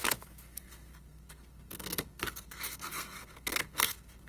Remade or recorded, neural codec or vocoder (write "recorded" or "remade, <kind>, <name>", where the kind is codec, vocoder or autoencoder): remade, codec, SNAC